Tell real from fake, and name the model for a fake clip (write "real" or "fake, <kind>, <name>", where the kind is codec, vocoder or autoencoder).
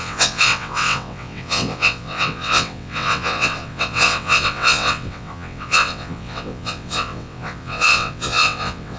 fake, vocoder, WaveNeXt